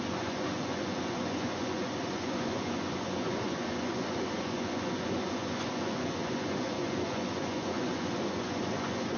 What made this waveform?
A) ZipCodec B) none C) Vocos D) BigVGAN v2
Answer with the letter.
C